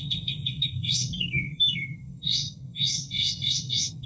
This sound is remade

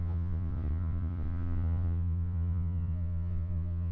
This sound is remade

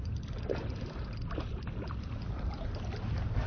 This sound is recorded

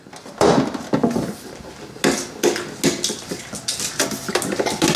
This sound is recorded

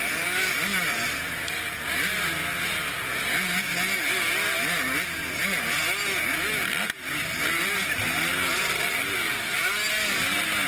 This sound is recorded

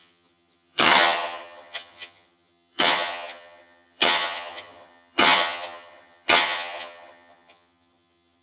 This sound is remade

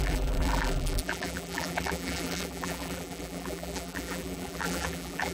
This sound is remade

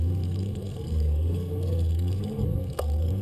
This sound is remade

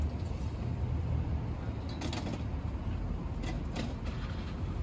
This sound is recorded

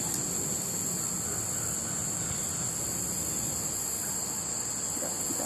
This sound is recorded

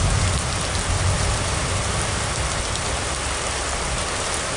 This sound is recorded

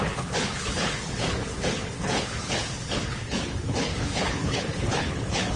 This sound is remade